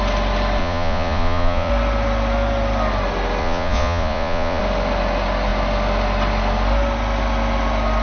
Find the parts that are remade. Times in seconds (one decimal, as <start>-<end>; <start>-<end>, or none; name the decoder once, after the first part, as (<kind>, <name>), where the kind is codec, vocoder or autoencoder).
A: 0.6-1.7 (vocoder, Vocos); 3.4-4.6